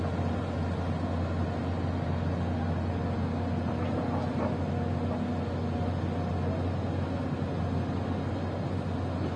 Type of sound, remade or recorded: recorded